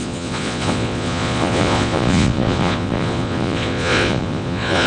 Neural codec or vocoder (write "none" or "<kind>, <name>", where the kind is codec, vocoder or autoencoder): vocoder, Vocos